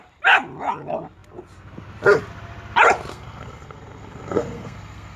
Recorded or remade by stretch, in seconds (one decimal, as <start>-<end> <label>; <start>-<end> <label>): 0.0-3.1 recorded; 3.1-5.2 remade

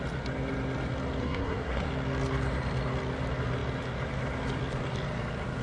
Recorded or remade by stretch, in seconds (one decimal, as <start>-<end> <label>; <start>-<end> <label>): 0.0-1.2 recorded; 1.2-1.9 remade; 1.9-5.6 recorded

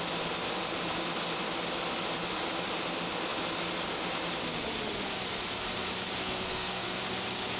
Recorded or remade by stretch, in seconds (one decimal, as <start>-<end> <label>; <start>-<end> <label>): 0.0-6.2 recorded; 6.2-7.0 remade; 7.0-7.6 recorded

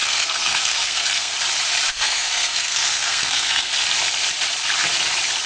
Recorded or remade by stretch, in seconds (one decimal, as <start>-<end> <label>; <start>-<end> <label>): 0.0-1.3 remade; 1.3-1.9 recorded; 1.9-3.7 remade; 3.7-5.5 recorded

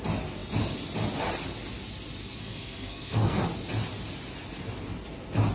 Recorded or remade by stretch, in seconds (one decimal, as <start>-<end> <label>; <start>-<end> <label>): 0.0-2.2 recorded; 2.2-3.4 remade; 3.4-5.5 recorded

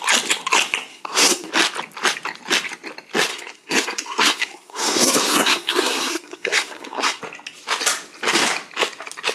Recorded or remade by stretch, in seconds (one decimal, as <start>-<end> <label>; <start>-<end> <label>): 0.0-0.9 recorded; 0.9-1.5 remade; 1.5-3.3 recorded; 3.3-7.2 remade; 7.2-9.3 recorded

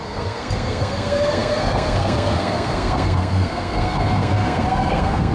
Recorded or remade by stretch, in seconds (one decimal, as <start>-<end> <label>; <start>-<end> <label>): 0.0-5.3 remade